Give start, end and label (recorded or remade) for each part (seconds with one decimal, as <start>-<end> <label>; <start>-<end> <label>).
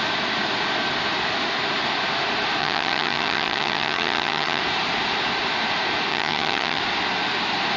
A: 0.0-2.6 recorded; 2.6-4.6 remade; 4.6-6.1 recorded; 6.1-6.8 remade; 6.8-7.8 recorded